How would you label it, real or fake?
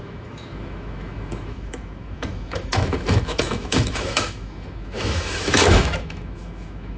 fake